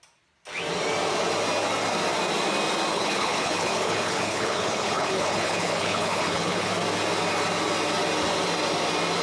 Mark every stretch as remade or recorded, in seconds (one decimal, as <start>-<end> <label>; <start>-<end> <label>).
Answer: 0.0-2.9 recorded; 2.9-6.7 remade; 6.7-9.2 recorded